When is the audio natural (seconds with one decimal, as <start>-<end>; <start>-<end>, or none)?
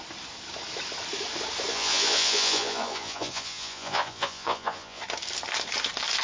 0.0-1.7; 5.0-6.2